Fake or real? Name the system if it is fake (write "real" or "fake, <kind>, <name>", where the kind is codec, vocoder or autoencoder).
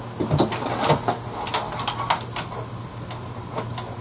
real